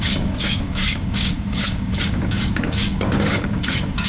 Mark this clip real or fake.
fake